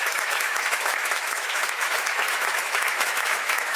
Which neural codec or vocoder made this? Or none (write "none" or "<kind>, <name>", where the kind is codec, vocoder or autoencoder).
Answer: autoencoder, DAC-VAE